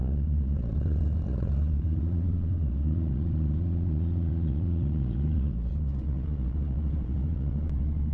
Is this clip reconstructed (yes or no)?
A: yes